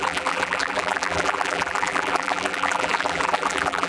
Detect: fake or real fake